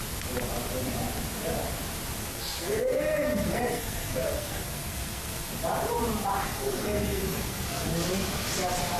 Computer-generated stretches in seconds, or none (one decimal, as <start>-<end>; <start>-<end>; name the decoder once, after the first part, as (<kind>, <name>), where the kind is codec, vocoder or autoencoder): 2.2-5.5 (codec, SNAC); 6.4-7.9